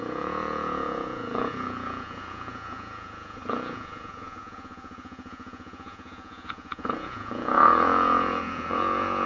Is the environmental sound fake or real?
fake